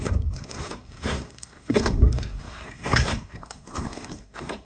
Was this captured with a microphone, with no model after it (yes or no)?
no